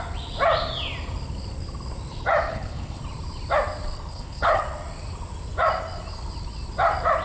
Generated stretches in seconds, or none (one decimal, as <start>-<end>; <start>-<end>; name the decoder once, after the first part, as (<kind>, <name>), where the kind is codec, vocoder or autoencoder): 2.5-3.0 (codec, HILCodec); 4.1-4.6